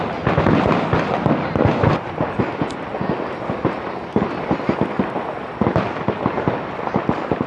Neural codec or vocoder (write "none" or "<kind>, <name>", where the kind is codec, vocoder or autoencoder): none